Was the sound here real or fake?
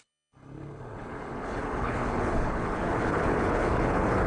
fake